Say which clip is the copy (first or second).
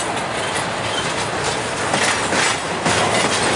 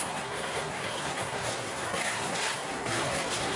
second